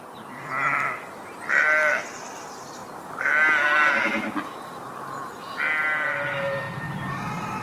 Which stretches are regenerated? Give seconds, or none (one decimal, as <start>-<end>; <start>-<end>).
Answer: none

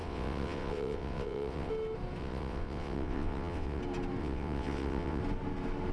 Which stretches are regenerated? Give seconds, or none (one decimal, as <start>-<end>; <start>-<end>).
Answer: 0.0-1.7; 2.2-3.8; 4.2-5.2